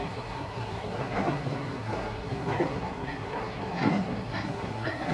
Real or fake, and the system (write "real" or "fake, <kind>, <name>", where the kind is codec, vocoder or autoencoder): fake, codec, SNAC